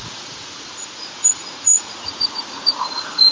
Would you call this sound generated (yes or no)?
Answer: yes